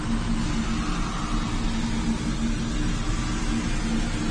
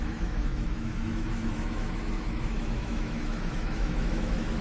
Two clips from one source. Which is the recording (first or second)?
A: first